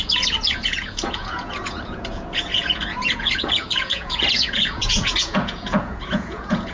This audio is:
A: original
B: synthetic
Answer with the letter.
B